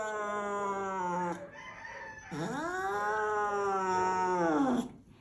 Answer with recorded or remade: recorded